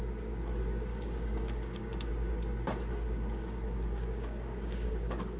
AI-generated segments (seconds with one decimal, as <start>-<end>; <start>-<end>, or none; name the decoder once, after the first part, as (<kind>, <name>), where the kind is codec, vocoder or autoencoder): 0.9-2.1 (codec, DAC); 2.9-5.4